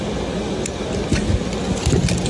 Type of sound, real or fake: real